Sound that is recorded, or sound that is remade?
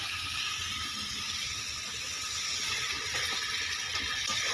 recorded